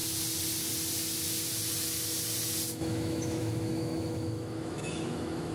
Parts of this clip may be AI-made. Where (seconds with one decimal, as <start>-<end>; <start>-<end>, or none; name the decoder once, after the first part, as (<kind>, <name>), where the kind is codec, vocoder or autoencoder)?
2.7-5.5 (autoencoder, DAC-VAE)